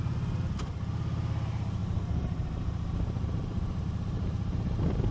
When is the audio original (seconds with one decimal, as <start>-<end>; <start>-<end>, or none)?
0.0-1.8; 3.8-5.1